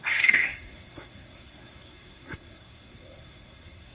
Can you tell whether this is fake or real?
fake